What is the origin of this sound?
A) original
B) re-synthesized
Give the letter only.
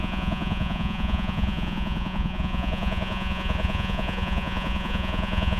B